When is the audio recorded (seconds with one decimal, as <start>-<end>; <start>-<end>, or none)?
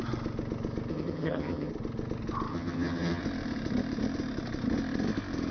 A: 0.0-0.9; 1.7-2.5; 3.2-5.5